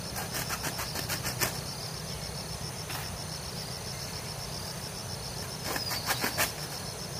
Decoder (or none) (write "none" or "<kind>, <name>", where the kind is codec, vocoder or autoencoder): none